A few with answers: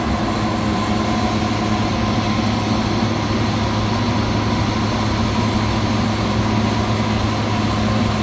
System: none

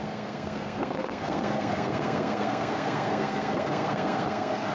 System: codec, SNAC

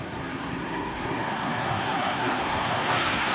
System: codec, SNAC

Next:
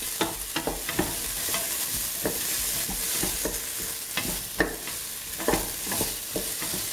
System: none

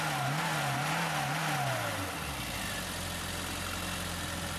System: none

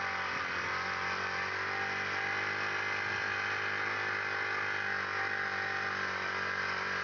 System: none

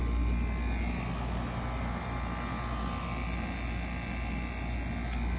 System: none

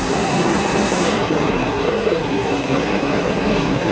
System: codec, SNAC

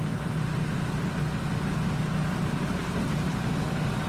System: none